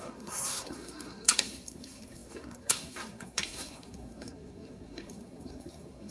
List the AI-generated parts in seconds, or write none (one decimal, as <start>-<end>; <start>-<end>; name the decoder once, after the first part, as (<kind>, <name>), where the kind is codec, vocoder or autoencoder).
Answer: 0.0-6.1 (codec, SNAC)